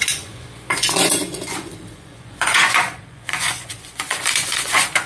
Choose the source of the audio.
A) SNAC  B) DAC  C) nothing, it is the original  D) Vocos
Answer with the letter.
D